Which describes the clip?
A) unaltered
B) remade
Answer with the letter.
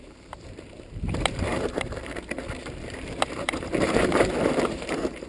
B